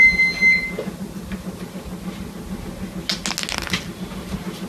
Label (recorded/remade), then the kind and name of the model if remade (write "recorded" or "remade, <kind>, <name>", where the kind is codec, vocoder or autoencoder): recorded